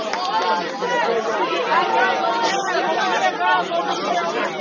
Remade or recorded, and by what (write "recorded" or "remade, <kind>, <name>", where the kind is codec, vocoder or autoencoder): recorded